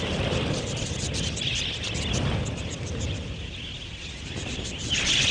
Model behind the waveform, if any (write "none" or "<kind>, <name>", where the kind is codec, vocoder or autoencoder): none